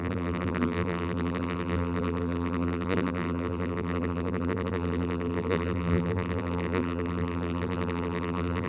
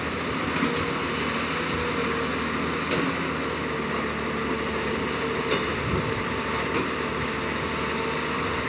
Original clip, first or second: second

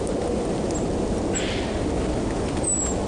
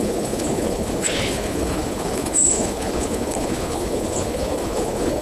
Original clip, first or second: first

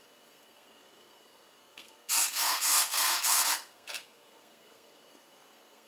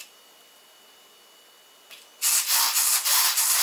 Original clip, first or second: second